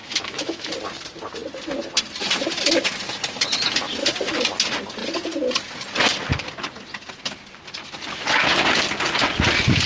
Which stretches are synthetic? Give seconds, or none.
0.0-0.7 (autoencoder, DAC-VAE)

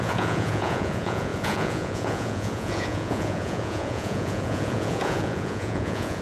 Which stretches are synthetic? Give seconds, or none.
0.0-6.2 (vocoder, Vocos)